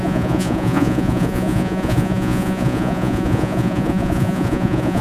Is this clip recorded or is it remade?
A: remade